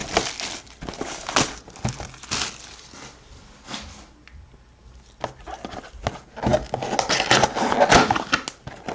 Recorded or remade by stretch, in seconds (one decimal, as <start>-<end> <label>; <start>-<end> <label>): 0.0-8.9 recorded